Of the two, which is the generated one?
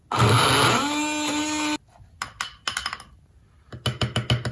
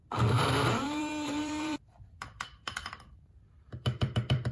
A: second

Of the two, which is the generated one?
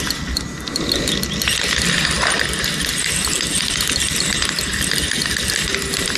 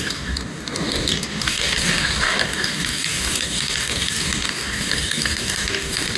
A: second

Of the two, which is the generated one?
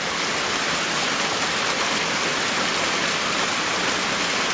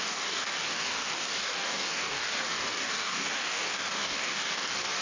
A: second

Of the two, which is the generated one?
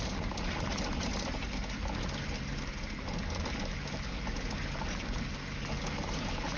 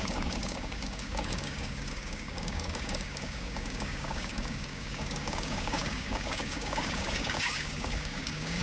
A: second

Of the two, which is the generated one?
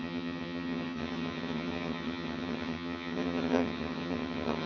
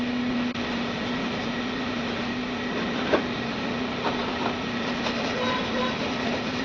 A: first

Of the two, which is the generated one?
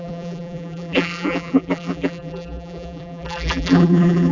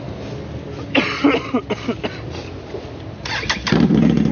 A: first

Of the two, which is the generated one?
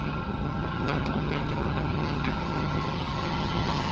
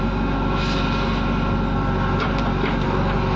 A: first